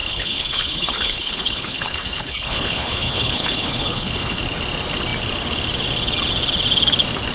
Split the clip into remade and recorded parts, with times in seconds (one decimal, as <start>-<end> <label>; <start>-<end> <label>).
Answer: 0.0-4.4 remade; 4.4-7.3 recorded